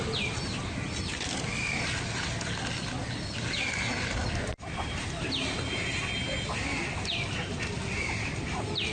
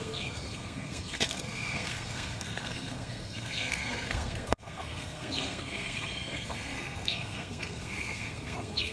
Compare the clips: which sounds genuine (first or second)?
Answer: first